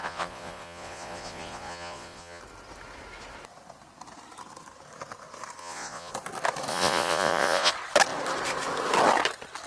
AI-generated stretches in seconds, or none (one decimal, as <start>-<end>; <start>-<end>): 0.0-2.4; 5.6-6.1; 6.7-7.7